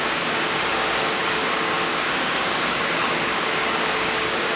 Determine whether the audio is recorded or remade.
remade